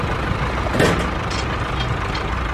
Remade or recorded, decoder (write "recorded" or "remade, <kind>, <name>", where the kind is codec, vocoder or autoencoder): recorded